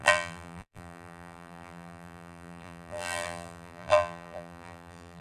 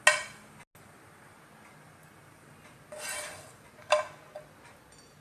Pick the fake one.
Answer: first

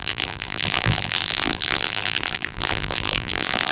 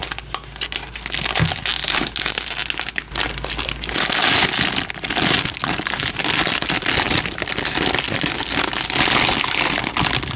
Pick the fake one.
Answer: first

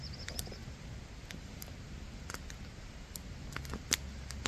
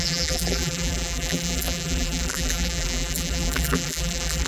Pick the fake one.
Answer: second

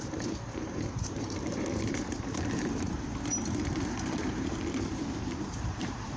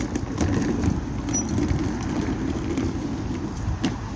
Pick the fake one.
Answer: first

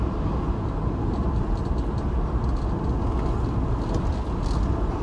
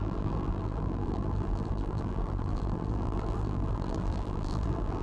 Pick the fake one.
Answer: second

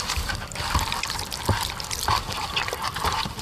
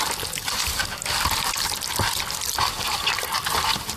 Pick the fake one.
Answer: first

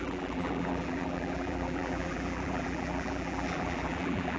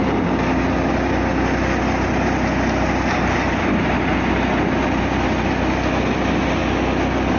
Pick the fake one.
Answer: first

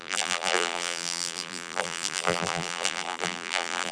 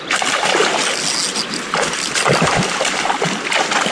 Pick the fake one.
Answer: first